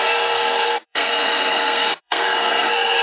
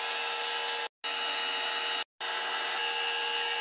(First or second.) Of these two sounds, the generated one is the first